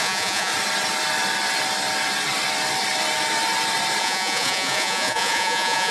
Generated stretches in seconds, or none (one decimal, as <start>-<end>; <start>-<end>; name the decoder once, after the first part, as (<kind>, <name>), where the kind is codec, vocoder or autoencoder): 0.0-0.5 (vocoder, Vocos); 4.0-5.9